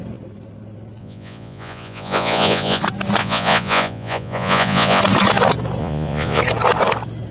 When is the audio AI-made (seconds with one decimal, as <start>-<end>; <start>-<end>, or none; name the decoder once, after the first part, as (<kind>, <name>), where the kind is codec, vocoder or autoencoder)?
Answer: 1.0-2.8 (vocoder, Vocos); 3.2-5.0; 5.8-6.4